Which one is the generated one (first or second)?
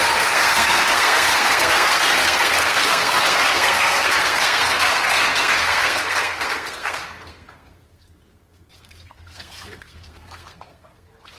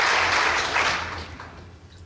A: first